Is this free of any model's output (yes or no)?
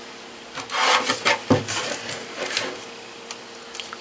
yes